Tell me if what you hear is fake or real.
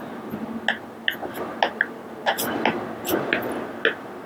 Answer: real